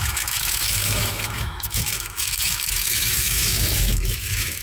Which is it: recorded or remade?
remade